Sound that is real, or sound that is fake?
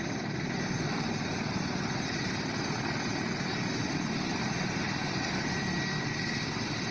real